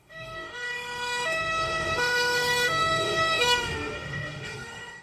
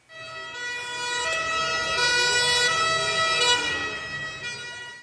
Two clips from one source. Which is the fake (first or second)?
first